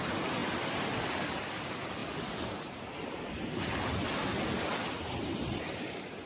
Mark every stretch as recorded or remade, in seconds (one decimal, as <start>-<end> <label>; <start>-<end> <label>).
0.0-6.3 recorded